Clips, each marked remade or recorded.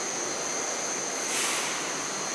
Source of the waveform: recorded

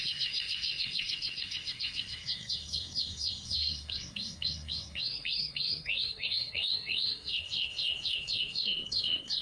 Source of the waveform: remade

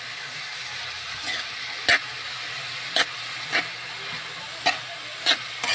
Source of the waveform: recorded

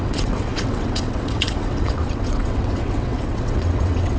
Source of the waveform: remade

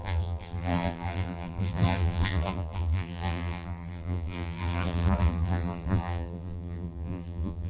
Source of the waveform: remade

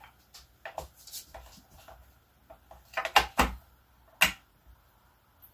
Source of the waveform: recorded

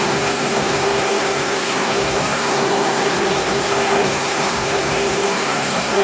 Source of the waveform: remade